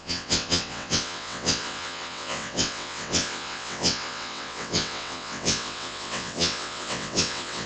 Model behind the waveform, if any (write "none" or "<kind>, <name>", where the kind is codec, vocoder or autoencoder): vocoder, WaveNeXt